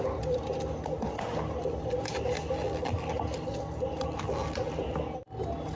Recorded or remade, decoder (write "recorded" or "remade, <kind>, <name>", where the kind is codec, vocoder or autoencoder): recorded